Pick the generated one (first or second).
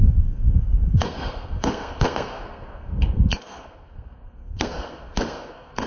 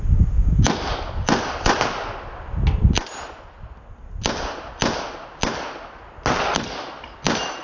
first